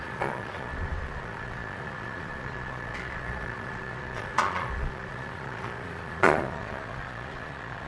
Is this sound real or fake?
fake